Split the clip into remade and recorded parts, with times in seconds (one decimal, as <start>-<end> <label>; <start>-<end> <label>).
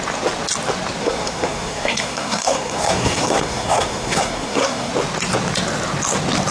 0.0-1.0 recorded; 1.0-4.9 remade; 4.9-6.5 recorded